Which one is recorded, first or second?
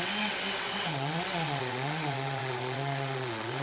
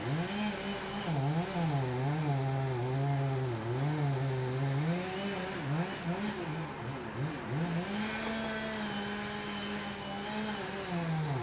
second